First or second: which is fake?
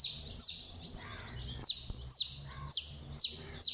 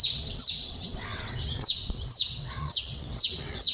second